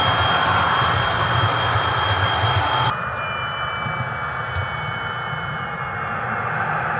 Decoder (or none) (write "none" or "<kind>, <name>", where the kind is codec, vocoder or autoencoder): none